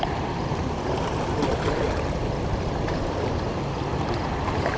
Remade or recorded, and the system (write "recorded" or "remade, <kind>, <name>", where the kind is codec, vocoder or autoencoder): recorded